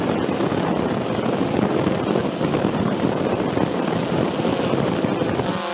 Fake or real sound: real